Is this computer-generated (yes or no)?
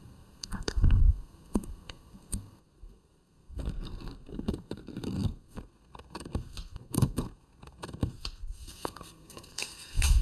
yes